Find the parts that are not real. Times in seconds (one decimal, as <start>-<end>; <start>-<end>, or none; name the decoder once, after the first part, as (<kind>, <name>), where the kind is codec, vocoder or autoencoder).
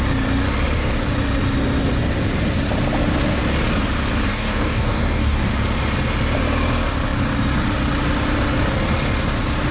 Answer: 4.3-5.5 (codec, DAC)